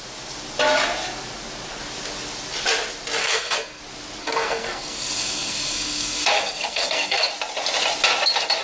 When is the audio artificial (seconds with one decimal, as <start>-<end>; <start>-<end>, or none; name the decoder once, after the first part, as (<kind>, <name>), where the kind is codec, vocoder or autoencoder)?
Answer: 3.2-3.8 (codec, SNAC); 4.2-7.3